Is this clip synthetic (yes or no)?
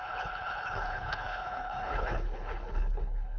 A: yes